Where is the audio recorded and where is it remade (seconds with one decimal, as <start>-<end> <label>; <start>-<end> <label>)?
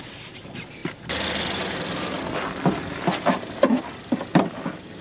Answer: 0.0-5.0 recorded